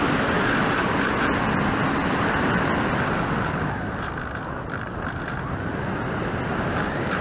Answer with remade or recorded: recorded